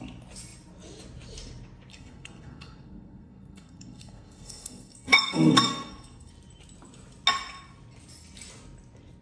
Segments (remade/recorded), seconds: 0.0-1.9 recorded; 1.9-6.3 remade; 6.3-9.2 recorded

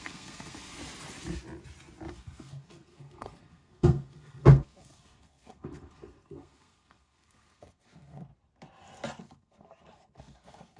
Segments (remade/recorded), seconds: 0.0-0.8 remade; 0.8-2.1 recorded; 2.1-8.3 remade; 8.3-9.2 recorded; 9.2-10.8 remade

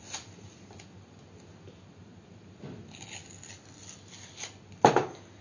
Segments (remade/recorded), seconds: 0.0-5.4 recorded

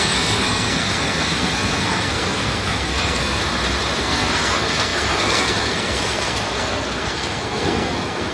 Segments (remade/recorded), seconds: 0.0-3.4 remade; 3.4-4.0 recorded; 4.0-8.3 remade

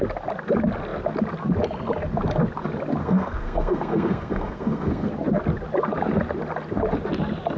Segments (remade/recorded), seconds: 0.0-3.0 recorded; 3.0-5.1 remade; 5.1-7.6 recorded

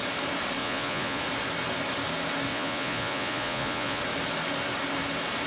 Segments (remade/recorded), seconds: 0.0-0.6 recorded; 0.6-1.2 remade; 1.2-2.5 recorded; 2.5-4.0 remade; 4.0-5.5 recorded

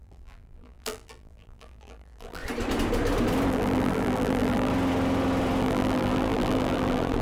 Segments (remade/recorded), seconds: 0.0-2.4 remade; 2.4-3.5 recorded; 3.5-4.7 remade; 4.7-5.6 recorded; 5.6-7.2 remade

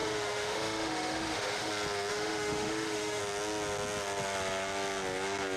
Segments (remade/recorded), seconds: 0.0-1.7 remade; 1.7-2.1 recorded; 2.1-3.2 remade; 3.2-5.6 recorded